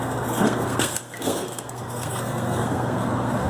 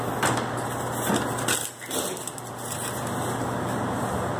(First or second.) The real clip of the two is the second